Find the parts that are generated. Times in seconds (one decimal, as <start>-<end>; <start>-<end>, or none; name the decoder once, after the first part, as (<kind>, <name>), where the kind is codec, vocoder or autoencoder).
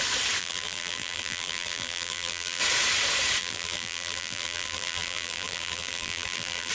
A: 0.4-2.6 (vocoder, BigVGAN v2); 3.4-6.7